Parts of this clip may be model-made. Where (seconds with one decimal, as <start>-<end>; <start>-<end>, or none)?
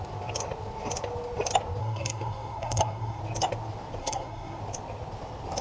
1.8-3.2; 4.0-4.6